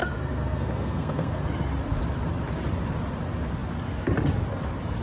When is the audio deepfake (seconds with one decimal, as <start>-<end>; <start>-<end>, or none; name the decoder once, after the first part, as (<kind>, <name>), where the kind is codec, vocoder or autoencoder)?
0.0-1.4 (codec, SNAC)